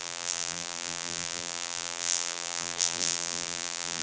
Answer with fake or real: fake